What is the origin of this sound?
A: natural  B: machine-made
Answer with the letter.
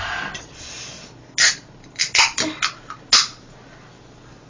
A